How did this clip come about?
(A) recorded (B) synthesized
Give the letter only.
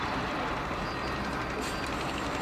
A